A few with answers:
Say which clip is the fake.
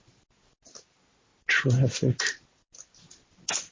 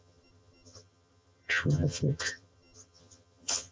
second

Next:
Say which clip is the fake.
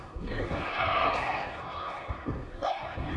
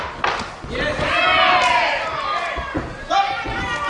first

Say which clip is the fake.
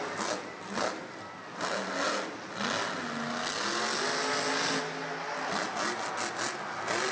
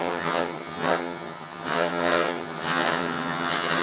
second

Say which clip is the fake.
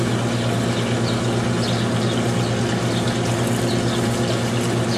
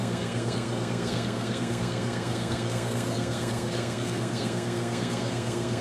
second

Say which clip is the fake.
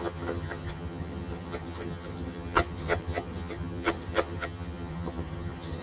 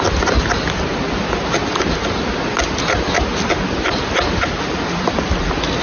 first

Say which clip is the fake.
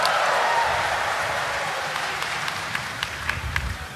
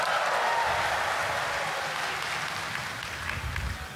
first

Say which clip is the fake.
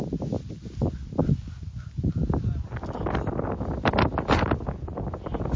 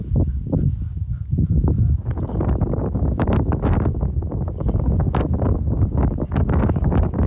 second